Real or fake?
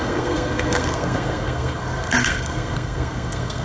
fake